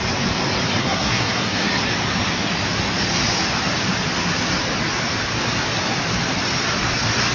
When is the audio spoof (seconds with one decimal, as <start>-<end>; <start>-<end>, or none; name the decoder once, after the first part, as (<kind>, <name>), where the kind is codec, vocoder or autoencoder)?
0.8-1.7 (codec, SNAC)